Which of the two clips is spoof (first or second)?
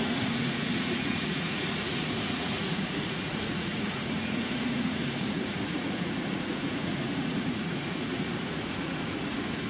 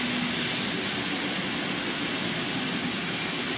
first